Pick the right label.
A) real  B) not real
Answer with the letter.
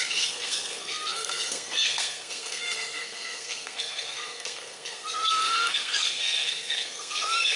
B